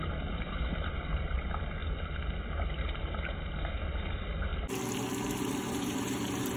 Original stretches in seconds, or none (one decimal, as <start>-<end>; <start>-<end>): 1.8-2.8; 4.5-5.1